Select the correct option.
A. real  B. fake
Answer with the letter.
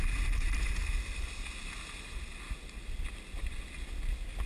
A